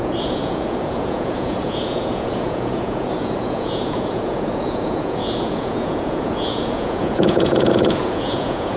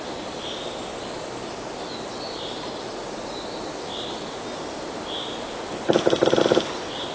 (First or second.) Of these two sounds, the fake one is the first